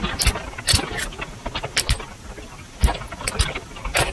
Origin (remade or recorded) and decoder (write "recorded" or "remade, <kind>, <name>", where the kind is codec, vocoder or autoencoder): recorded